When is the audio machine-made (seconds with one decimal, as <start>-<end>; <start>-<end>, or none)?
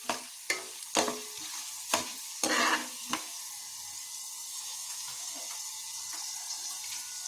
2.8-3.4; 4.5-5.4